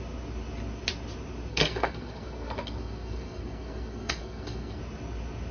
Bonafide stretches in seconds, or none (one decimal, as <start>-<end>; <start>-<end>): 0.0-1.5; 4.8-5.5